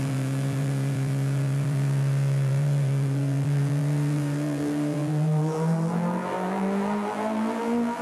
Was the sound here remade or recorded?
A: remade